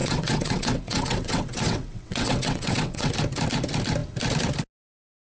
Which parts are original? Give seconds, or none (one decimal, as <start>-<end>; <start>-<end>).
3.1-5.3